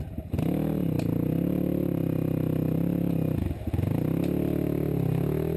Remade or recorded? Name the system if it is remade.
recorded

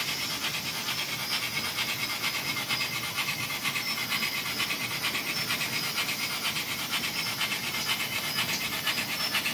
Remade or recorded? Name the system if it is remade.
recorded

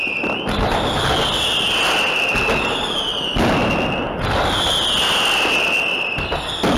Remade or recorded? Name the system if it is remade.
recorded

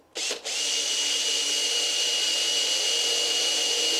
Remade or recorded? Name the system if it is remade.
recorded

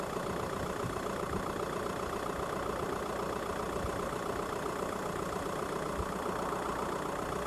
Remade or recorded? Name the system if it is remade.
recorded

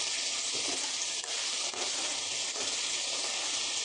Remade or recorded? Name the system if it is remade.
remade, vocoder, BigVGAN v2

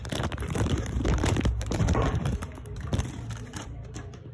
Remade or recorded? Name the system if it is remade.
remade, vocoder, BigVGAN v2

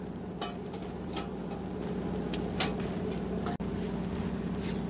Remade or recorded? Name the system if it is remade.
recorded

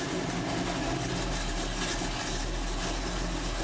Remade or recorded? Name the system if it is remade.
recorded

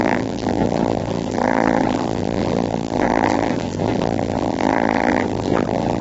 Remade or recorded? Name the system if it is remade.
remade, vocoder, BigVGAN v2